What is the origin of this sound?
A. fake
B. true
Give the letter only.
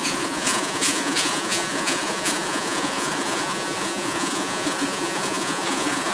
A